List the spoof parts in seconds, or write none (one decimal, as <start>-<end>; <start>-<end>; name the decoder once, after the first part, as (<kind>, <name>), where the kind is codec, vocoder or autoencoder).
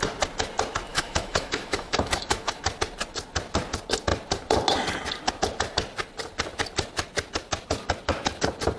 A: 0.9-2.6 (autoencoder, DAC-VAE)